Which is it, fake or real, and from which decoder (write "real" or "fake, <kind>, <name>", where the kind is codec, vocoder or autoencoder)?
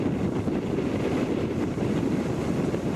real